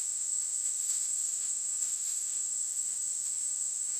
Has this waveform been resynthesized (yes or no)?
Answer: yes